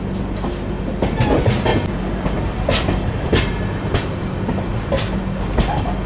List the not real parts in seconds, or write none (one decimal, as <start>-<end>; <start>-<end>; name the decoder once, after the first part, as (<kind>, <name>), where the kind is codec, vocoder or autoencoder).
1.7-3.5 (vocoder, BigVGAN v2)